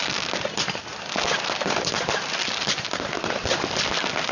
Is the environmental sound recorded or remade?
recorded